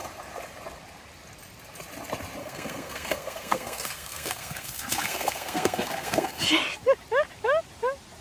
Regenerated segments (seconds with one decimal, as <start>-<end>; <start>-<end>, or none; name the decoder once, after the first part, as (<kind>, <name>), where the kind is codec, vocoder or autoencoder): 2.4-6.4 (codec, SNAC)